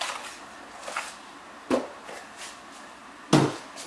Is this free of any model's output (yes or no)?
yes